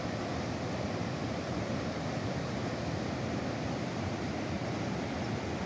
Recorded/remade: recorded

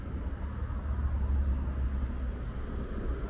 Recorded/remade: recorded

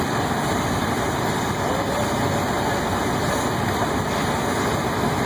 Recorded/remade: remade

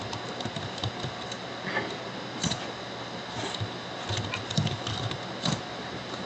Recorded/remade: recorded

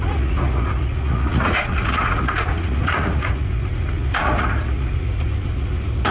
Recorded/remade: remade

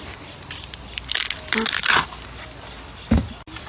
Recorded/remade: recorded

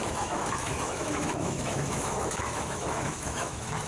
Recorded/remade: remade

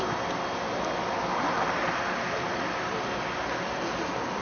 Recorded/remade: recorded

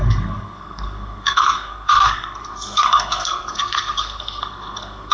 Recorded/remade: remade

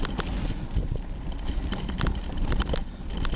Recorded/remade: recorded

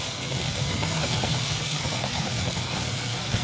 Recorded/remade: remade